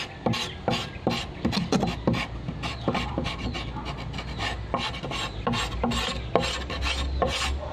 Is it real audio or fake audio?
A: real